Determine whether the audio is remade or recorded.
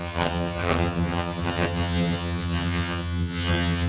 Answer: remade